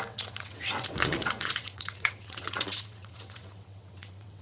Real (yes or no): no